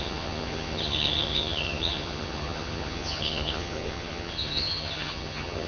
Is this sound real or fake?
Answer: fake